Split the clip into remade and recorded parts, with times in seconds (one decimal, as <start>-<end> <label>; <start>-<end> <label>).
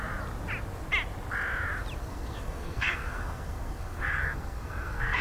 0.0-2.0 recorded; 2.0-5.2 remade